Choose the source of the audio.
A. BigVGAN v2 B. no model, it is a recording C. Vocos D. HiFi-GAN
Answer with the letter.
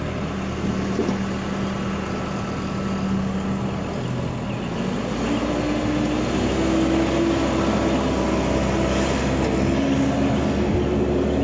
B